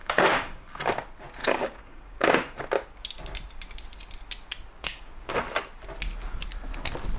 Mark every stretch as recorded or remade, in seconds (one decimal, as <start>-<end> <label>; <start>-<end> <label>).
0.0-0.8 remade; 0.8-1.4 recorded; 1.4-2.6 remade; 2.6-4.8 recorded; 4.8-5.4 remade; 5.4-7.2 recorded